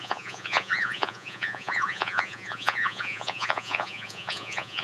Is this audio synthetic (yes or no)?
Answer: yes